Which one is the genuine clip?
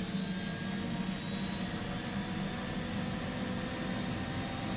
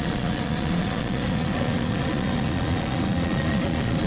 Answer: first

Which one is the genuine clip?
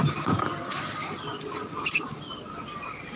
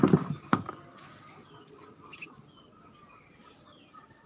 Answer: second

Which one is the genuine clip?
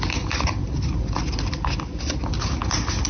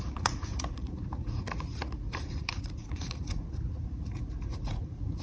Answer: first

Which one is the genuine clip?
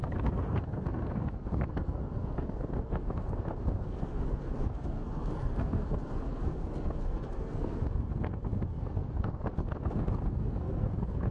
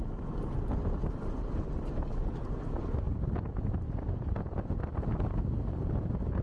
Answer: second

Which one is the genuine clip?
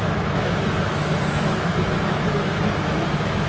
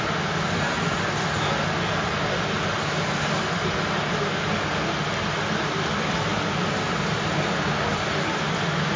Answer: second